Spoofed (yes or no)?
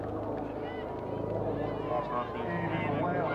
no